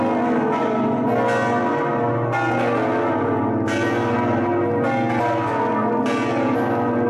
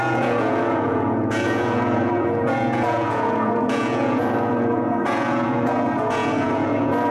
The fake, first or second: second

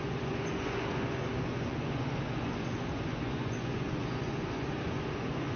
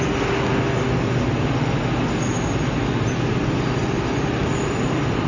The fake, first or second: first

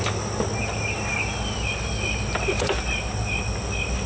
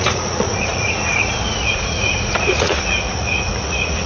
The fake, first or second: second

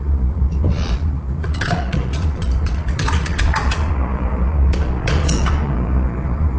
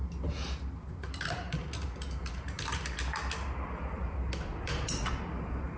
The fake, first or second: first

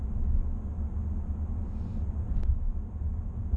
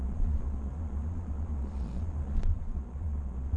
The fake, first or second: second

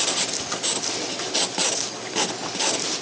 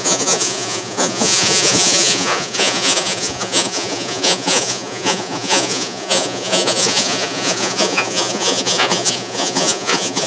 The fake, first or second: second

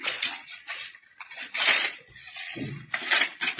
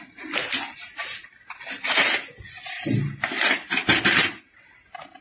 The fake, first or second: first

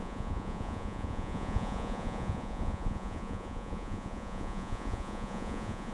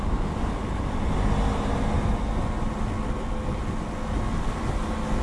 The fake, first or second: first